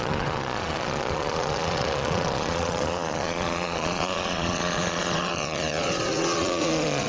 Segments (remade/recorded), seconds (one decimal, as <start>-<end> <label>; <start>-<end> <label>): 0.0-7.1 remade